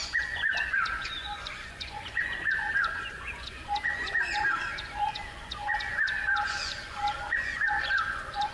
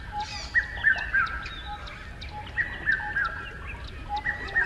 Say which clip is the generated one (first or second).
first